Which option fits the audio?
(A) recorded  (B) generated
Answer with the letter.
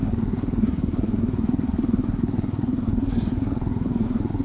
B